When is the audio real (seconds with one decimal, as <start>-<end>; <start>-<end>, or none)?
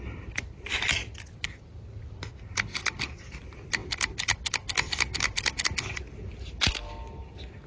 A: 0.0-7.7